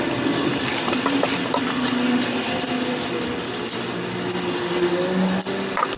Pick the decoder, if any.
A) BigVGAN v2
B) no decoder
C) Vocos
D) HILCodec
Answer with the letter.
B